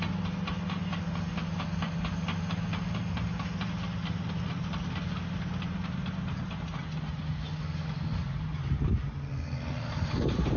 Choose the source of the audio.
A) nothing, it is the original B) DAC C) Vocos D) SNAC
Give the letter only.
A